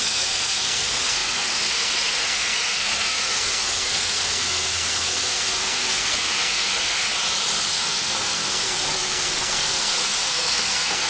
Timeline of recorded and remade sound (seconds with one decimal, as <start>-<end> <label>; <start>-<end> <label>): 0.0-7.1 remade; 7.1-7.7 recorded; 7.7-11.1 remade